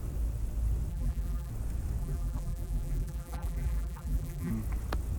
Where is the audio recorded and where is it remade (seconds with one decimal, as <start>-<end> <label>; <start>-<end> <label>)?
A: 0.0-0.9 recorded; 0.9-1.5 remade; 1.5-2.0 recorded; 2.0-4.5 remade; 4.5-5.2 recorded